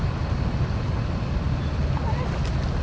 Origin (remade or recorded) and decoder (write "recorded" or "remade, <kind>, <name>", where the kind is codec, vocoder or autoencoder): recorded